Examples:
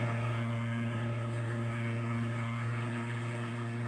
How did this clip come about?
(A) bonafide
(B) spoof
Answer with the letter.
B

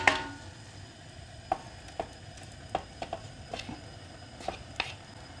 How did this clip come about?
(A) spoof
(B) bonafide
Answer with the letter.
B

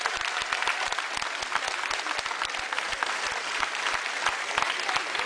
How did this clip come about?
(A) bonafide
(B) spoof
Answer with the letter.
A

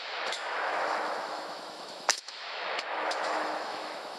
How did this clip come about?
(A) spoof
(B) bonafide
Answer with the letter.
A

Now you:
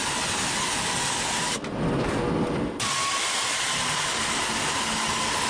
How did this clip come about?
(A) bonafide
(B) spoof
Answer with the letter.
A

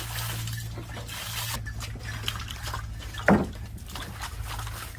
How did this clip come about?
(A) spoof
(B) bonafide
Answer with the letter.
B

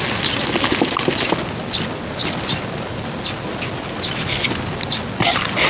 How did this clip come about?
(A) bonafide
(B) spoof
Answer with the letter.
A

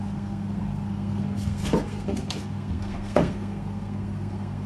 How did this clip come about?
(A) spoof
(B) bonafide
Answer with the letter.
A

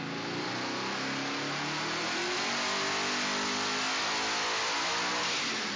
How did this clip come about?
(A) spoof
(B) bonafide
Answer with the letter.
B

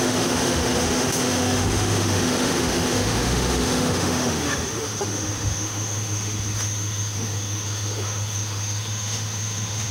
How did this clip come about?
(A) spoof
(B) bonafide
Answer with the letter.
A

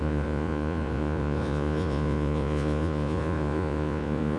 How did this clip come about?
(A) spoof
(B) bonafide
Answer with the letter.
A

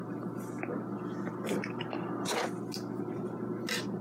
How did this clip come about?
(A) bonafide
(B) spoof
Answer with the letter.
A